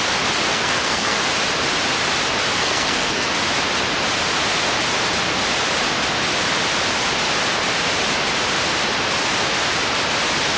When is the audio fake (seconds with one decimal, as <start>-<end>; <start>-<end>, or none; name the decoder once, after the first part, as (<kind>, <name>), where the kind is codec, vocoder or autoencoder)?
0.5-1.2 (codec, SNAC); 2.6-3.3